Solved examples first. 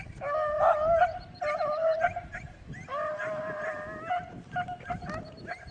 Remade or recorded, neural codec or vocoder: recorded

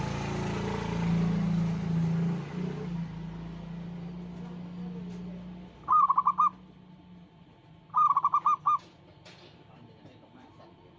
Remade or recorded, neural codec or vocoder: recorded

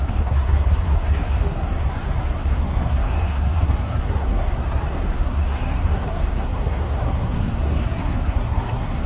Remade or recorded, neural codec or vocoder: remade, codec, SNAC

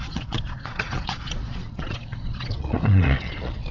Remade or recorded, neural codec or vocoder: remade, vocoder, Vocos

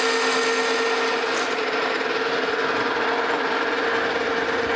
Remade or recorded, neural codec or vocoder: recorded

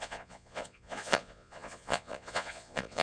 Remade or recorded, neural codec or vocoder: remade, vocoder, Vocos